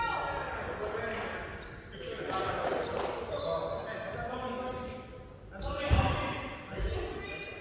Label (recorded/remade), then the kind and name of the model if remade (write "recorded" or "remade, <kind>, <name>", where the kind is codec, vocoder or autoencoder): recorded